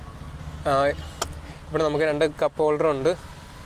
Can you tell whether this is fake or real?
real